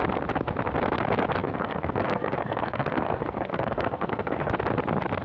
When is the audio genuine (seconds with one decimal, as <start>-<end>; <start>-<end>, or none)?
0.0-1.4; 4.5-5.2